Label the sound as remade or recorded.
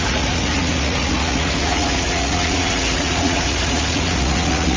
remade